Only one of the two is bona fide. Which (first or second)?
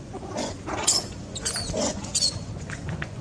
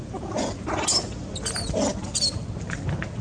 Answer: second